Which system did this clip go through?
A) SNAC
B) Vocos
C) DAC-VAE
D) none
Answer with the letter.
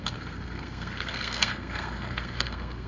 A